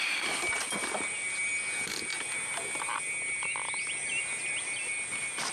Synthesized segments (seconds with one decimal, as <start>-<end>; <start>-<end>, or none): none